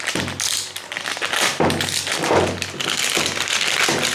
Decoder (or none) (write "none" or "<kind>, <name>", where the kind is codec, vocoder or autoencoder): none